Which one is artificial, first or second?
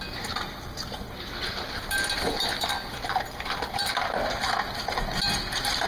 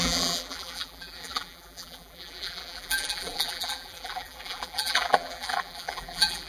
second